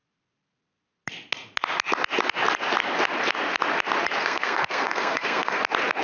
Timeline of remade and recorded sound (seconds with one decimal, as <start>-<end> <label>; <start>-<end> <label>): 0.0-4.2 recorded; 4.2-5.6 remade; 5.6-6.0 recorded